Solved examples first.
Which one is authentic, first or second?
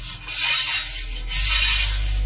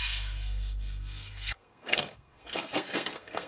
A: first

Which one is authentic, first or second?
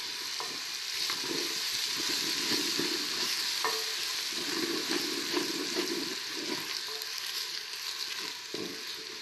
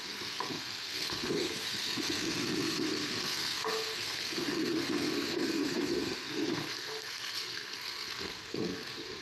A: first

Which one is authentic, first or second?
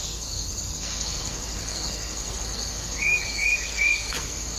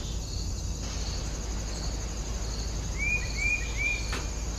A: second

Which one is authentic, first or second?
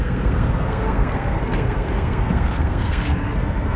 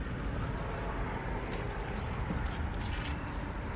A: second